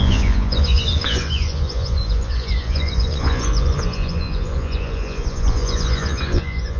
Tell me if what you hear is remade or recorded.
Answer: remade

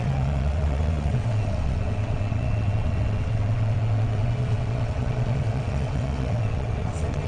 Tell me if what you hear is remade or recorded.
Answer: remade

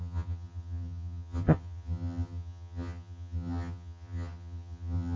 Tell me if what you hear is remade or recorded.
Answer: remade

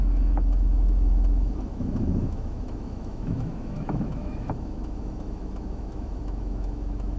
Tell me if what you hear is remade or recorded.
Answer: remade